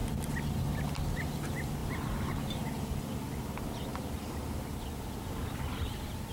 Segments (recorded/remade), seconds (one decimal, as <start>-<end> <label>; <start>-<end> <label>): 0.0-3.9 recorded; 3.9-4.8 remade; 4.8-6.3 recorded

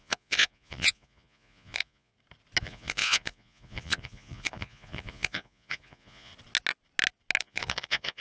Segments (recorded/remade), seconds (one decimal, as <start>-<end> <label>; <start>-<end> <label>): 0.0-2.1 remade; 2.1-2.6 recorded; 2.6-6.3 remade; 6.3-7.4 recorded; 7.4-8.2 remade